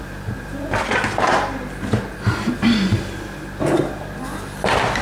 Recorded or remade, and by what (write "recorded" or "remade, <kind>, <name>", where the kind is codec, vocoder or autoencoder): recorded